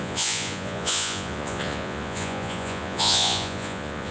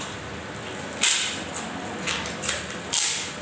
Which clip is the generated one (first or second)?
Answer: first